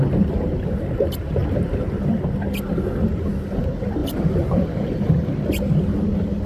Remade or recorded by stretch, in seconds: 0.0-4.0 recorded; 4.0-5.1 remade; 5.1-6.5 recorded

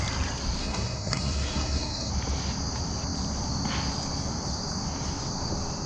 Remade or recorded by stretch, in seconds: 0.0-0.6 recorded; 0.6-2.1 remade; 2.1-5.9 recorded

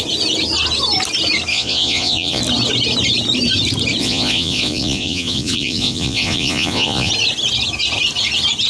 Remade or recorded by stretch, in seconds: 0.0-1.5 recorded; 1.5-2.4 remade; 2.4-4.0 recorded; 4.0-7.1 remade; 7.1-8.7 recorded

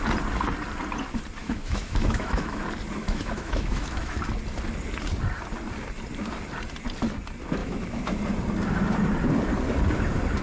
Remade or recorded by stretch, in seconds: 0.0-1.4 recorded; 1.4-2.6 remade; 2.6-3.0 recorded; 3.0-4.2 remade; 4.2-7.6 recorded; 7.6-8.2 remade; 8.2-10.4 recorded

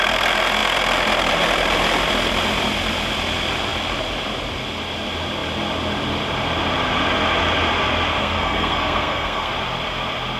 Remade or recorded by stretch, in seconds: 0.0-8.2 recorded; 8.2-9.5 remade; 9.5-10.4 recorded